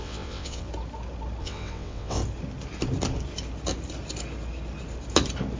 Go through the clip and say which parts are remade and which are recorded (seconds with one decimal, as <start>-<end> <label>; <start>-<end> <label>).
0.0-0.7 remade; 0.7-1.4 recorded; 1.4-2.2 remade; 2.2-5.6 recorded